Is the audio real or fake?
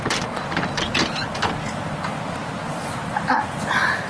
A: real